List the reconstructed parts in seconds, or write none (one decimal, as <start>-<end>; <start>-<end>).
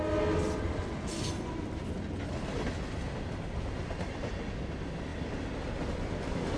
none